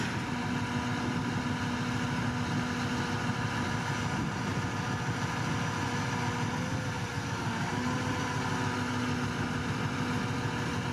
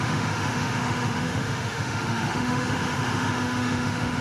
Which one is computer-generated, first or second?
second